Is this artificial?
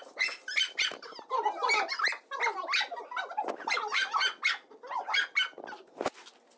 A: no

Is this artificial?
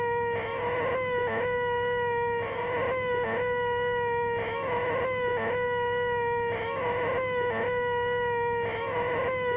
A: no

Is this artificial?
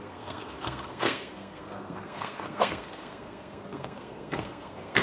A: yes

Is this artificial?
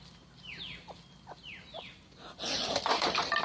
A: no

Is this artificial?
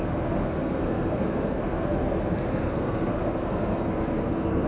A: yes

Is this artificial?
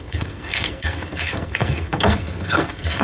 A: yes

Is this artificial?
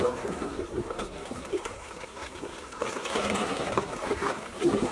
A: yes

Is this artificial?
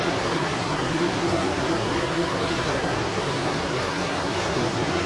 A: yes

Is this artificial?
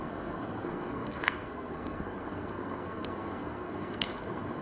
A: yes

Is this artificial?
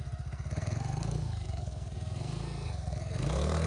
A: yes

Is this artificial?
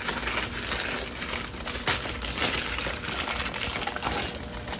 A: no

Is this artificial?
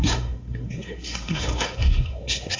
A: yes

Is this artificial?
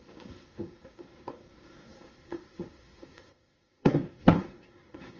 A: yes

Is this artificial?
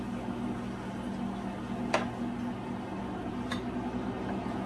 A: no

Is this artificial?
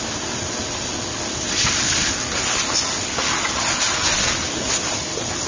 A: no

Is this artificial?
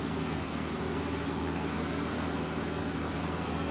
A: yes